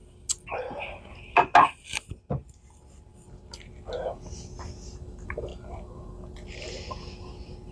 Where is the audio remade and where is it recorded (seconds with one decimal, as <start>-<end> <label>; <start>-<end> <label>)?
0.0-7.7 recorded